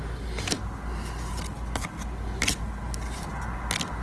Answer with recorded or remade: recorded